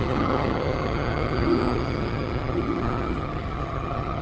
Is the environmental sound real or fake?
fake